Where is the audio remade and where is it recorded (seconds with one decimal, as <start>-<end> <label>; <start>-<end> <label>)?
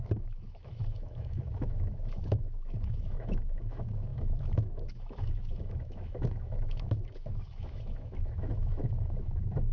0.0-9.7 remade